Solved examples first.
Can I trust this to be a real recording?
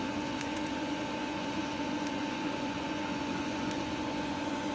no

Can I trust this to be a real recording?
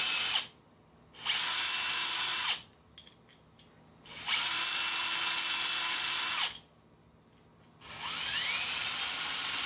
yes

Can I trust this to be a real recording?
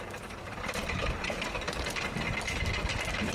yes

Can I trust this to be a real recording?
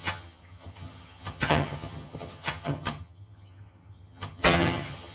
no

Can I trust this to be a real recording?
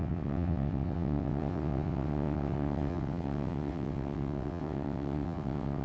no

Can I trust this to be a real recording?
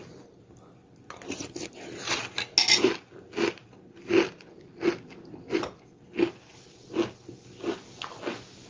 yes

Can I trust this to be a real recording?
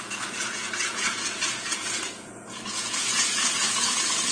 no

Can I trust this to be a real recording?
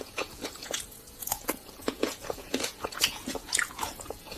no